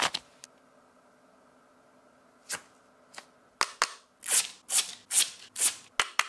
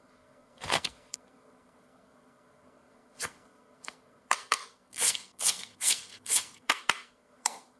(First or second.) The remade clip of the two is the second